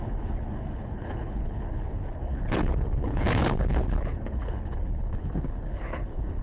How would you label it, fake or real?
fake